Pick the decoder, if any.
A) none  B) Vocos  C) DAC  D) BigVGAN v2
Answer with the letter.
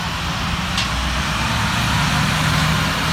A